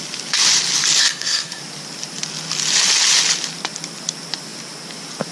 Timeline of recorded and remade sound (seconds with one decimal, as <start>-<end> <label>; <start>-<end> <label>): 0.0-1.0 recorded; 1.0-1.6 remade; 1.6-5.3 recorded